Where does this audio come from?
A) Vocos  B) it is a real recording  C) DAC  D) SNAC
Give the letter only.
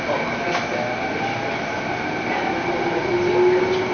B